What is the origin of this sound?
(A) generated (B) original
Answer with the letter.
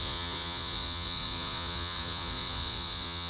A